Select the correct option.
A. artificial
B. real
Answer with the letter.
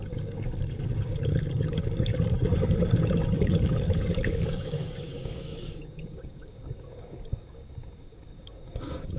A